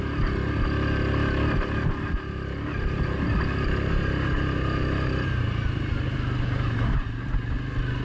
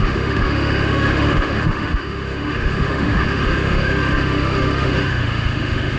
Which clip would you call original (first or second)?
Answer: first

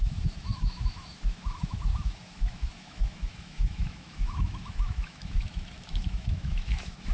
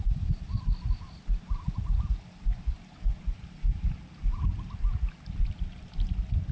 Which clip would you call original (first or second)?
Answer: second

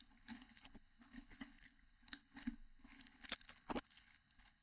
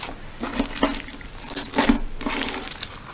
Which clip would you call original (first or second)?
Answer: second